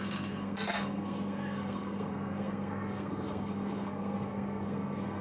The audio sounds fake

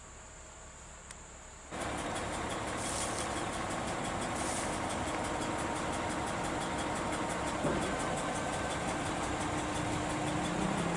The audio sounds real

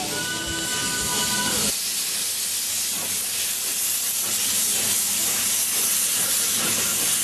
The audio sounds real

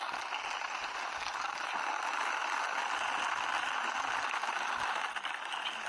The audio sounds real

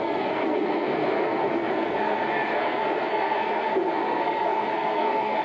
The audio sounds fake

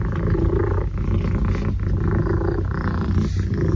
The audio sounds real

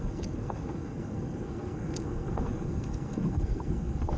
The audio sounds fake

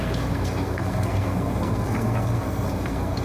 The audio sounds fake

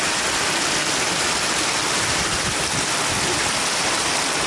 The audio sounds real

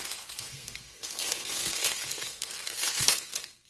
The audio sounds fake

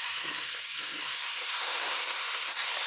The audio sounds fake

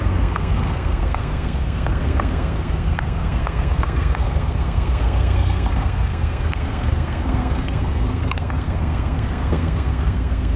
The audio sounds fake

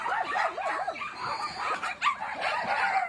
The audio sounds real